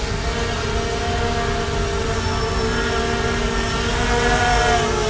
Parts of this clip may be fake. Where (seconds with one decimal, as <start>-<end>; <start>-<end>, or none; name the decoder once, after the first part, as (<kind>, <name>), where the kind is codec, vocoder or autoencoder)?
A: none